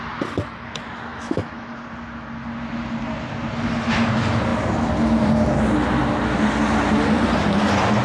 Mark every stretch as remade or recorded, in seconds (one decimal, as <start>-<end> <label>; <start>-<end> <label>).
0.0-1.1 recorded; 1.1-1.7 remade; 1.7-8.0 recorded